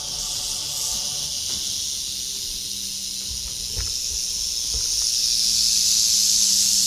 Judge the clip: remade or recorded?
recorded